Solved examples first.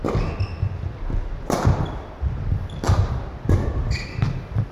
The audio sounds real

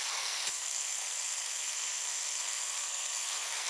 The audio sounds fake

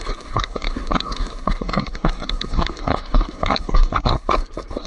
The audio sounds fake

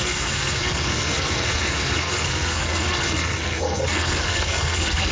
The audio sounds fake